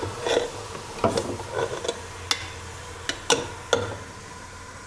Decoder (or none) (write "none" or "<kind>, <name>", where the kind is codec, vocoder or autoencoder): none